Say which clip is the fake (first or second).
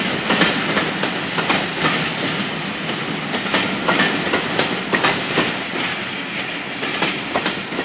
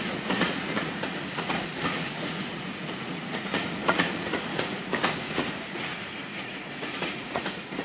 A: second